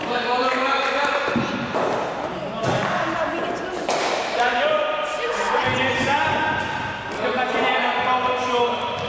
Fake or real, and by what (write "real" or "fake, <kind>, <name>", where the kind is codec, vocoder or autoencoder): real